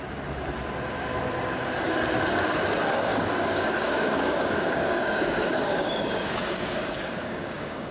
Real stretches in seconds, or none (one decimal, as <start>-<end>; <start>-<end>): 0.0-3.1